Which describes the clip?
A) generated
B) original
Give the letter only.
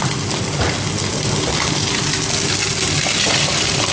B